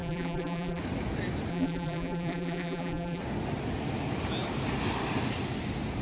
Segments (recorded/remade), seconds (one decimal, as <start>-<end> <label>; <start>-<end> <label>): 0.0-0.8 remade; 0.8-1.5 recorded; 1.5-3.2 remade; 3.2-6.0 recorded